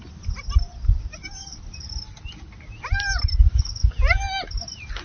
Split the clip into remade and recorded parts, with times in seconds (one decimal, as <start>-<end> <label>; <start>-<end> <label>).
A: 0.0-5.0 recorded